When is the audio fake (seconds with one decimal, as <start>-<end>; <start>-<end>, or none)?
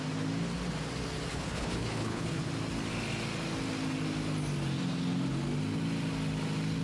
1.3-2.5